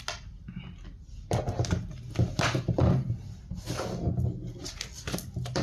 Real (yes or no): yes